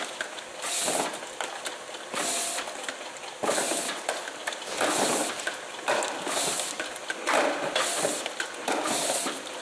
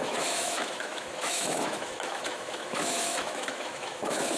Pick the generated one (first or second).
second